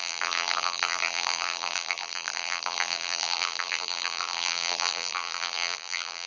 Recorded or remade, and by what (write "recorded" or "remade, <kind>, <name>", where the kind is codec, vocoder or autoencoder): remade, vocoder, BigVGAN v2